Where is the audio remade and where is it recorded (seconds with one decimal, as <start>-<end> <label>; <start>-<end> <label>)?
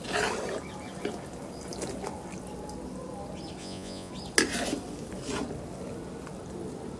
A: 0.0-3.6 recorded; 3.6-4.1 remade; 4.1-7.0 recorded